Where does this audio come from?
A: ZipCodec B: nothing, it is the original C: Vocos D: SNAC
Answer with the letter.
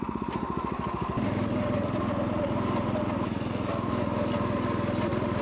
B